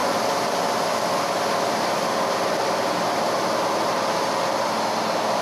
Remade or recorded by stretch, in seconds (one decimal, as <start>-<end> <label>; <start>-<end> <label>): 0.0-5.4 recorded